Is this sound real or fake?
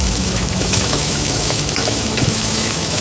fake